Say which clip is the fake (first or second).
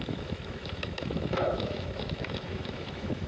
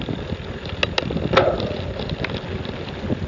first